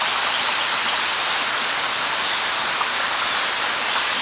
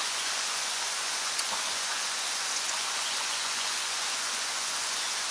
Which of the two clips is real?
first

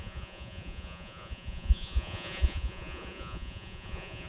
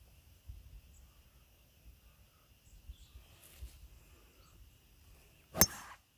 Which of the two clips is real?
second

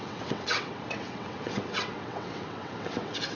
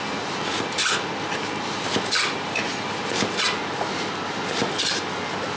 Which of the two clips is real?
second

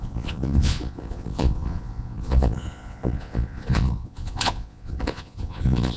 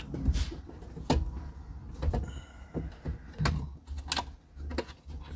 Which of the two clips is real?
second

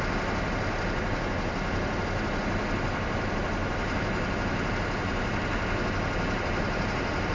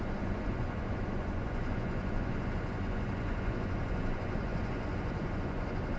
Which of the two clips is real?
first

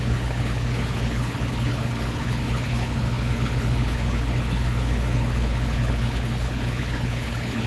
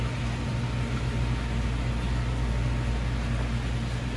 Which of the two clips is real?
second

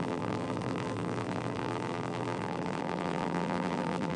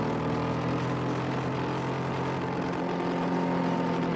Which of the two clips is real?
second